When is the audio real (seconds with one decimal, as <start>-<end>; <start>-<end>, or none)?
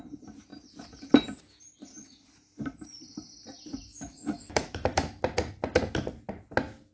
0.0-3.9; 5.2-6.9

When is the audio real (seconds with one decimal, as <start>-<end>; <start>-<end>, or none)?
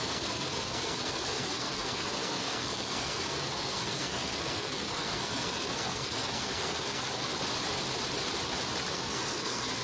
7.3-8.9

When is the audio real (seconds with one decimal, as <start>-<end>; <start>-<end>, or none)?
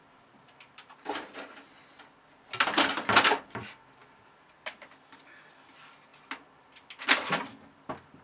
1.4-8.2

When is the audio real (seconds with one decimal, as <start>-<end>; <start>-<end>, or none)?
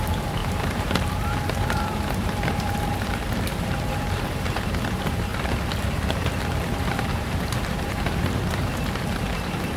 5.3-5.8